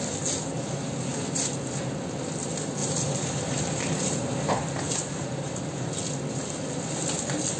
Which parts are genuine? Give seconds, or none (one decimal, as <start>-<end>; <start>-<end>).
0.0-2.8; 4.5-7.6